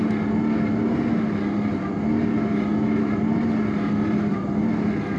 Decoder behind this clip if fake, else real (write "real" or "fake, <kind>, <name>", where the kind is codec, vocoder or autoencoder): real